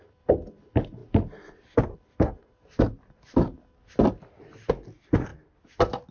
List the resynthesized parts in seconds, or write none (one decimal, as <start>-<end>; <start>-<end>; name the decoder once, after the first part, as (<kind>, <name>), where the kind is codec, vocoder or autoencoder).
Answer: none